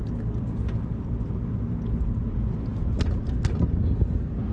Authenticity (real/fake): real